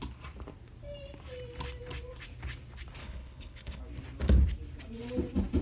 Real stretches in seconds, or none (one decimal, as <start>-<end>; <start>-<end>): 0.0-3.0; 3.8-5.6